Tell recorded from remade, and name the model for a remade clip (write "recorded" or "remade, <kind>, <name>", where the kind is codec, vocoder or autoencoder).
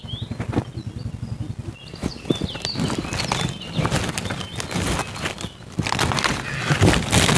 recorded